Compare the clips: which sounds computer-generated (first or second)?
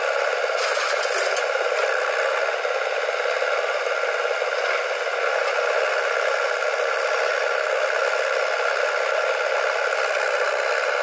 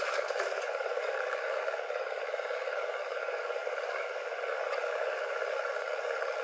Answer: second